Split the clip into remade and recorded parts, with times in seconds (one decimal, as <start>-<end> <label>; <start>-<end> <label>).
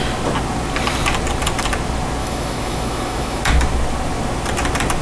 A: 0.0-2.2 recorded; 2.2-3.4 remade; 3.4-5.0 recorded